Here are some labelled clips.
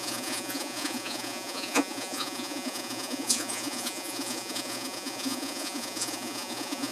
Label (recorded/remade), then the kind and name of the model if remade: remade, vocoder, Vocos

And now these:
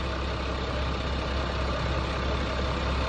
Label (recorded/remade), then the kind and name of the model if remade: recorded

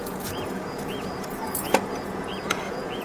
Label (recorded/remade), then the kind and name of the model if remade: remade, vocoder, Vocos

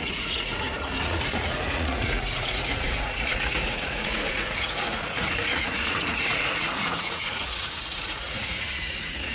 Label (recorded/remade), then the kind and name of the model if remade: remade, vocoder, Vocos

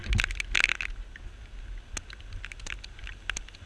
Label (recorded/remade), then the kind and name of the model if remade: recorded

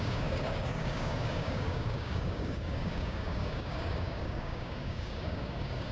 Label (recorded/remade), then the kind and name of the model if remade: remade, codec, DAC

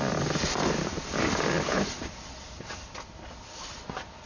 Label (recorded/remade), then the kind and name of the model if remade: recorded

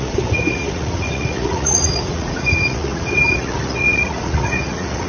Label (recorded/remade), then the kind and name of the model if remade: remade, vocoder, Vocos